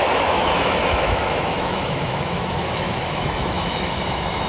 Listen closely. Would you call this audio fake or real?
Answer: fake